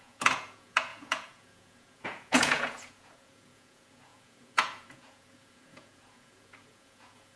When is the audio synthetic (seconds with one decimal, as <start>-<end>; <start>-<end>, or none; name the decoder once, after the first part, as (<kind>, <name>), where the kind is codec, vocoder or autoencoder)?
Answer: 0.0-7.4 (vocoder, Vocos)